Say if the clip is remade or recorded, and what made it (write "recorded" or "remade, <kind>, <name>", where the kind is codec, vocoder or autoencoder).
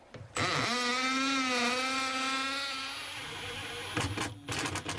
recorded